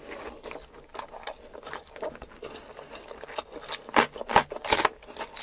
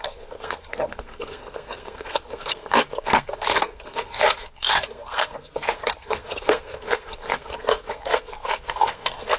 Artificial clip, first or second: second